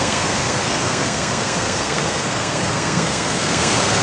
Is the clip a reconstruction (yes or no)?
yes